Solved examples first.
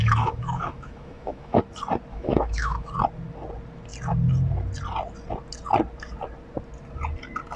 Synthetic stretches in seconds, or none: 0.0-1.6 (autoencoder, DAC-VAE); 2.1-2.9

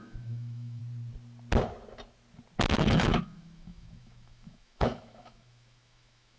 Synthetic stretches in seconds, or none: 0.0-0.8 (autoencoder, DAC-VAE); 2.7-6.4

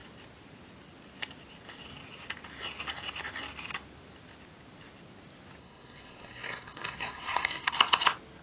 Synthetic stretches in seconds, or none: 5.6-7.7 (codec, SNAC)